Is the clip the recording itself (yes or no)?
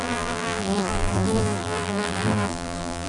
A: no